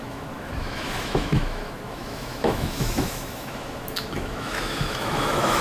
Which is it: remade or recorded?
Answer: remade